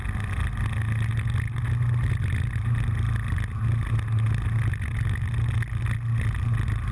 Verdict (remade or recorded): recorded